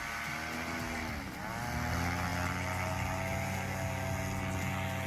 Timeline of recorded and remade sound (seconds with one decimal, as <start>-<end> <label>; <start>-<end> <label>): 0.0-5.1 recorded